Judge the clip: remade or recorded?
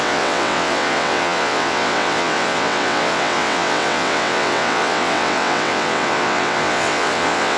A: remade